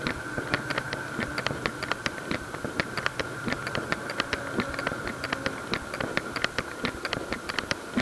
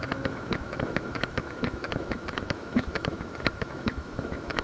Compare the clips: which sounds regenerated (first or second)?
second